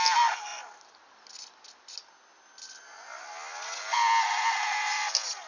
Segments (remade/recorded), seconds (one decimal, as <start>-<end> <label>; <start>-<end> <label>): 0.0-5.5 recorded